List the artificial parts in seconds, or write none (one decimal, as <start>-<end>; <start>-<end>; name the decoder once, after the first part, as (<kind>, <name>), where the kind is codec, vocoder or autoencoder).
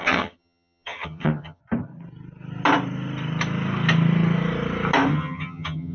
0.0-1.6 (vocoder, HiFi-GAN); 5.1-5.9